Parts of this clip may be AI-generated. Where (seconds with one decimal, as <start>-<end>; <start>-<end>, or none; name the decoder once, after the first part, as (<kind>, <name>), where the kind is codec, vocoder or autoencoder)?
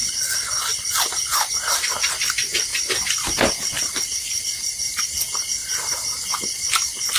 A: 5.6-6.3 (vocoder, BigVGAN v2)